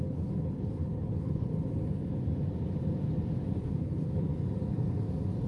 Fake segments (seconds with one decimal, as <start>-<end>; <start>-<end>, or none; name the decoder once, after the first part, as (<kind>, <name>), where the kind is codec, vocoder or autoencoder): 0.0-1.5 (codec, HILCodec); 3.6-4.3